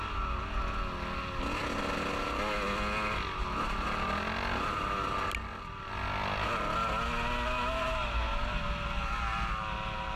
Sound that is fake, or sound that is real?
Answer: real